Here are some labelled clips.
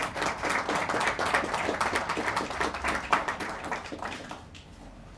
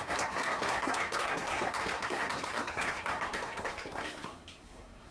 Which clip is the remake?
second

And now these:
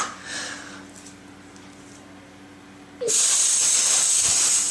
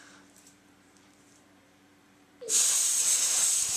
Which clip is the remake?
second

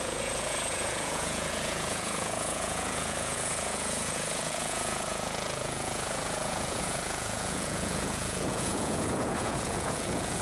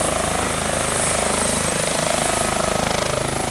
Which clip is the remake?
first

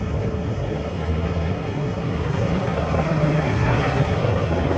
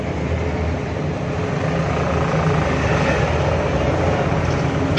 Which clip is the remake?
first